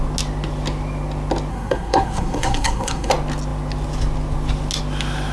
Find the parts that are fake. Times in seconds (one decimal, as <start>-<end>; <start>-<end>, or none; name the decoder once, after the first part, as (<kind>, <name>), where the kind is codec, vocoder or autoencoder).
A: 1.5-3.1 (codec, SNAC)